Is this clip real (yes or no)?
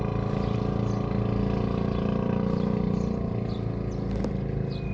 yes